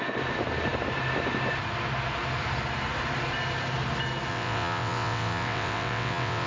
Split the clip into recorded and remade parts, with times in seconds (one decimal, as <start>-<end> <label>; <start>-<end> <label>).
0.0-4.3 recorded; 4.3-6.5 remade